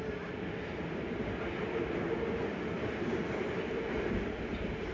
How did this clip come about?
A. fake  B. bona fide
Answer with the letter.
B